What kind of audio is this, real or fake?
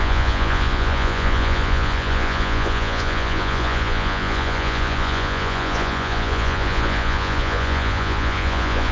fake